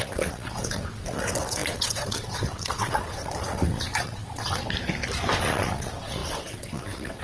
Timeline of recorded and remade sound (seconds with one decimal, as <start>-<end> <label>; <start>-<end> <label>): 0.0-4.6 remade; 4.6-5.4 recorded; 5.4-7.2 remade